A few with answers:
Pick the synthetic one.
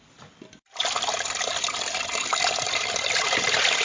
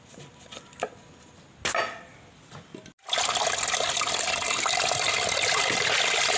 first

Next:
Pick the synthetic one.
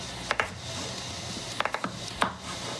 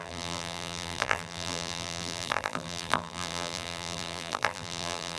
second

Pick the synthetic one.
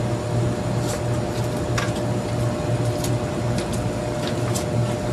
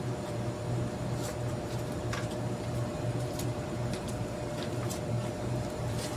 second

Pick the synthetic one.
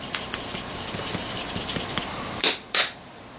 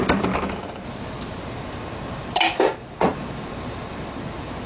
second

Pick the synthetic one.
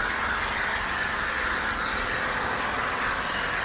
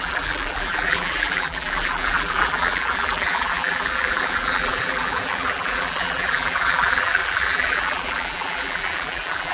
second